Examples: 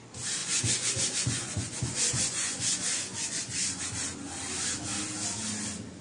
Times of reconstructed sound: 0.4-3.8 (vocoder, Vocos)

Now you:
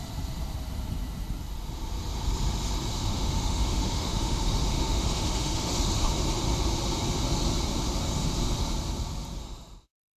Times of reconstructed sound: 2.9-6.1 (autoencoder, DAC-VAE); 9.4-10.2

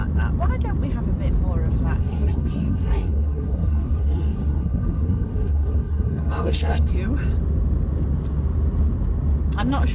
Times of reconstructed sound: 2.0-6.9 (codec, SNAC)

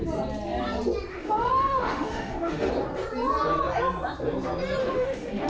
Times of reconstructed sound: 1.1-2.7 (autoencoder, DAC-VAE); 4.8-5.5

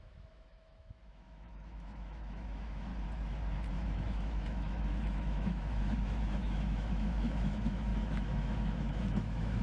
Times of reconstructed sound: 0.0-2.9 (autoencoder, DAC-VAE); 3.7-9.6

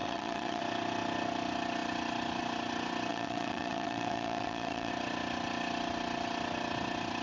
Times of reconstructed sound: 0.0-0.6 (vocoder, WaveNeXt); 3.1-4.9